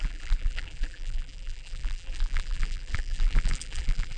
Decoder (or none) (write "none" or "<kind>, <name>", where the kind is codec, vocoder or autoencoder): vocoder, BigVGAN v2